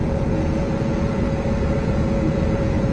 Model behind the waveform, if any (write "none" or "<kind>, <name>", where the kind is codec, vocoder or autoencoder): vocoder, Vocos